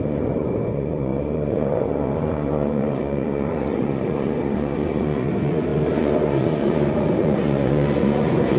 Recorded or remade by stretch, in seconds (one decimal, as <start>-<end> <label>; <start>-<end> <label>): 0.0-8.6 remade